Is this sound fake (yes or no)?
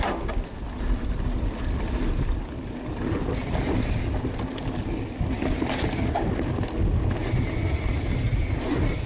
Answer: no